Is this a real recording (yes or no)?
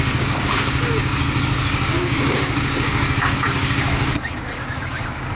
no